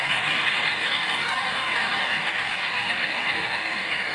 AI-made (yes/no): yes